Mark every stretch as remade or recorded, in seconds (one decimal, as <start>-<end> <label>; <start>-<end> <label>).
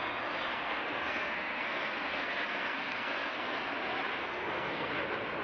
0.0-0.5 recorded; 0.5-3.7 remade; 3.7-4.2 recorded; 4.2-4.9 remade; 4.9-5.4 recorded